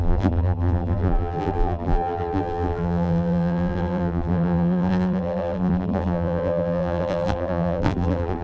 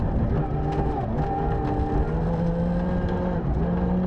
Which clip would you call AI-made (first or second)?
first